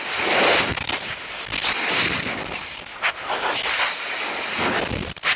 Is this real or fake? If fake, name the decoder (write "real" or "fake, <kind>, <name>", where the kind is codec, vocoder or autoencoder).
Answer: real